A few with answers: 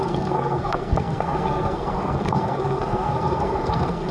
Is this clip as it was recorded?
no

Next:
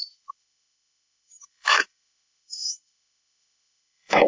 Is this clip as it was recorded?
no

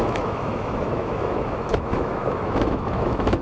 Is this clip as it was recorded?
no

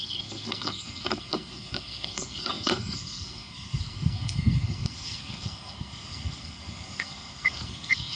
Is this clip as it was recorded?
no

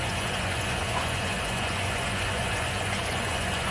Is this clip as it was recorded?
no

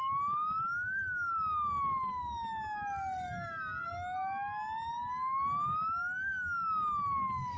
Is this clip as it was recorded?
yes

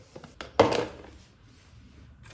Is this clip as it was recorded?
yes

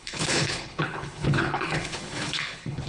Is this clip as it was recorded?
no